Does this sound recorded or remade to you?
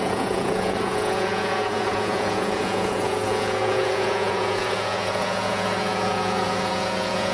remade